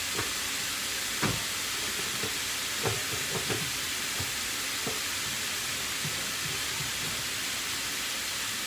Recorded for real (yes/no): no